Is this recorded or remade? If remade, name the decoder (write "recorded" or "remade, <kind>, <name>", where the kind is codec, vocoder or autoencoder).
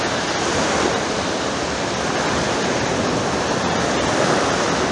recorded